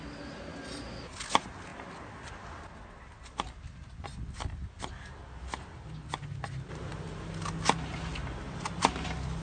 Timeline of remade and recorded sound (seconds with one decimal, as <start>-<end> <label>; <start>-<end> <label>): 0.0-9.4 recorded